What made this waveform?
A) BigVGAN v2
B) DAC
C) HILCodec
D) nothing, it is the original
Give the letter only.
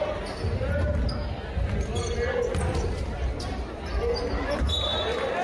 D